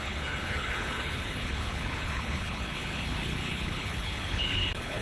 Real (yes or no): no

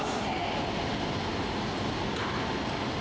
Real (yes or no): yes